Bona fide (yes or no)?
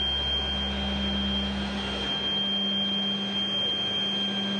yes